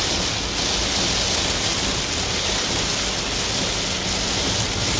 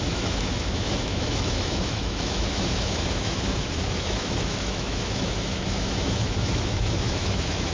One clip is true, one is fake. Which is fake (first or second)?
second